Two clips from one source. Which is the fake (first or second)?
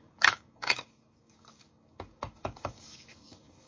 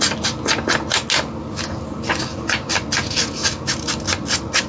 first